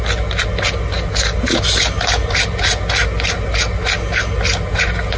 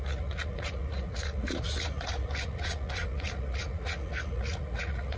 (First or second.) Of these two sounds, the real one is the first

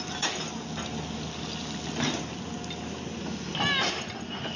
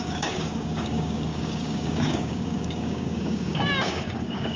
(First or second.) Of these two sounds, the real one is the first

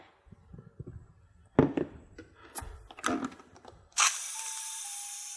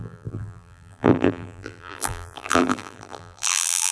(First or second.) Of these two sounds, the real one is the first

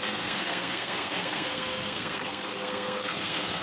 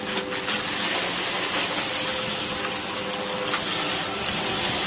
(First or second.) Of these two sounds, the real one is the second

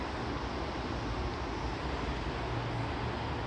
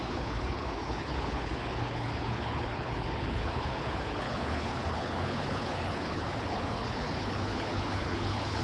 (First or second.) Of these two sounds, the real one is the first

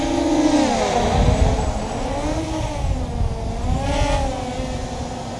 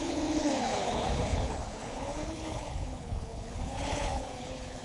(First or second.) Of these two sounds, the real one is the first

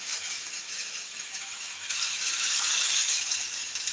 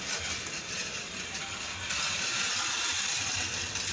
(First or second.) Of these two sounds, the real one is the second